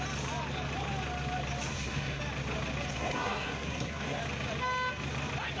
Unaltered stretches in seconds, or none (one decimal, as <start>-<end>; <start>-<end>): 0.0-1.7; 2.2-2.9; 4.2-5.6